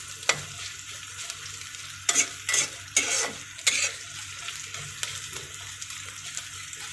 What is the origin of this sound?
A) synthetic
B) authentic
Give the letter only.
B